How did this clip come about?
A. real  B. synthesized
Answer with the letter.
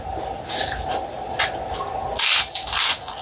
A